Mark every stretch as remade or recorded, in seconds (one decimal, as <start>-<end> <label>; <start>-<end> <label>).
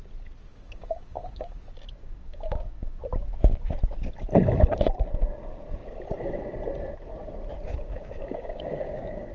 0.0-0.5 recorded; 0.5-1.6 remade; 1.6-2.0 recorded; 2.0-3.0 remade; 3.0-7.7 recorded; 7.7-9.3 remade